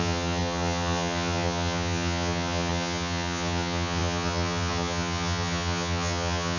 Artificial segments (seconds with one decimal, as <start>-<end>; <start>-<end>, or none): 0.0-6.6